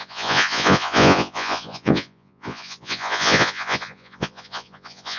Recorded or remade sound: remade